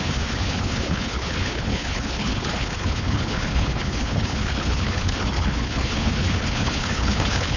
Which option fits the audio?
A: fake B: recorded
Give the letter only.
A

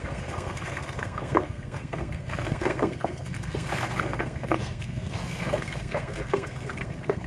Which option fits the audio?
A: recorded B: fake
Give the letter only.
B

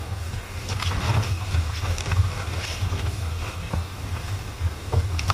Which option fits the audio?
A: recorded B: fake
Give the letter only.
B